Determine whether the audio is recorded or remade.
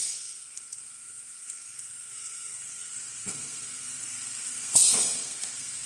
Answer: remade